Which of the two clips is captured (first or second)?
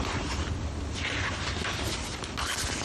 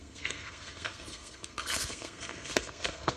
first